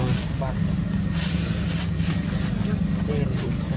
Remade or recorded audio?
recorded